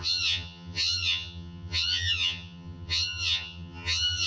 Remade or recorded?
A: remade